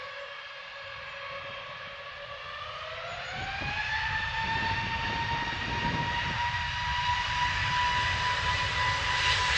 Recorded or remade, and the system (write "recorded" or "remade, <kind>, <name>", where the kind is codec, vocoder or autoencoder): recorded